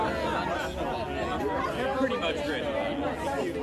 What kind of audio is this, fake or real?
real